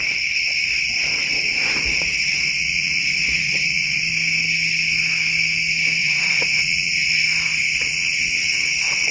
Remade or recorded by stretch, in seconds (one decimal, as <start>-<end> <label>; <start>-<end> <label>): 0.0-4.0 remade; 4.0-6.0 recorded; 6.0-7.1 remade; 7.1-7.6 recorded; 7.6-9.1 remade